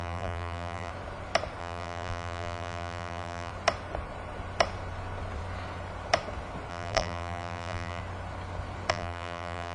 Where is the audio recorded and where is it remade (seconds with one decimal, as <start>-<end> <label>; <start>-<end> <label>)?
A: 0.0-0.9 remade; 0.9-1.6 recorded; 1.6-3.5 remade; 3.5-6.7 recorded; 6.7-8.0 remade; 8.0-8.9 recorded; 8.9-9.7 remade